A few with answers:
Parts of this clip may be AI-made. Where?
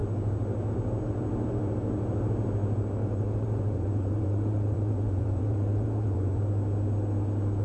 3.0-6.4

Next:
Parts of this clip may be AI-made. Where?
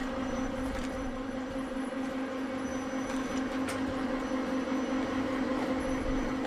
0.0-2.1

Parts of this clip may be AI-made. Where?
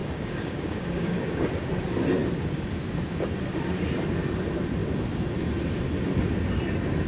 0.0-1.7